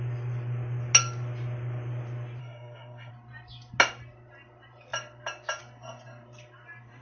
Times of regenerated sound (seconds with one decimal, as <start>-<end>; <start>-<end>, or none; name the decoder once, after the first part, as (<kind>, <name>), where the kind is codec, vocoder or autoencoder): 2.4-3.1 (codec, SNAC)